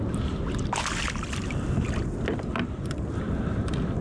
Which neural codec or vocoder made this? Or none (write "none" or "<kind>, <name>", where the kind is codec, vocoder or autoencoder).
none